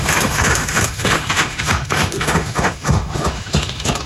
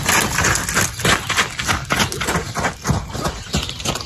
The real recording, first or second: second